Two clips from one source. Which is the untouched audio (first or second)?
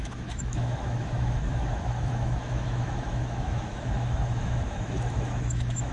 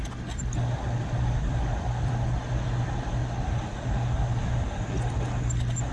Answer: second